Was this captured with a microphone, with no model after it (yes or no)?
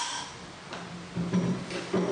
yes